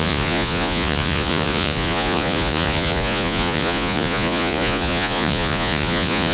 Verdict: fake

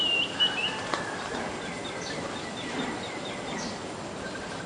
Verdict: real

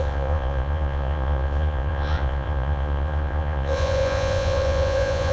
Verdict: fake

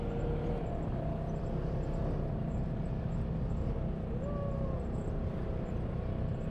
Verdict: real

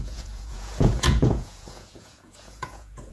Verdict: fake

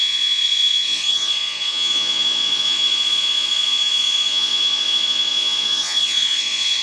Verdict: fake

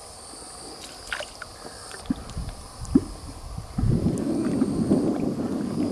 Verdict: real